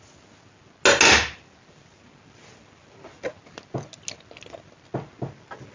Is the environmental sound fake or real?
real